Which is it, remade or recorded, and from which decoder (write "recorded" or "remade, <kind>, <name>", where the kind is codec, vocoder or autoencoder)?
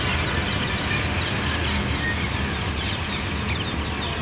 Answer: recorded